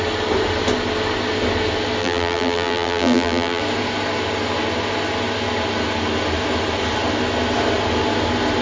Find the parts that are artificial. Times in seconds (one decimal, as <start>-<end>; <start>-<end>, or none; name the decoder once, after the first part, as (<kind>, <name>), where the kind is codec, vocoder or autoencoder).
2.0-3.6 (vocoder, BigVGAN v2)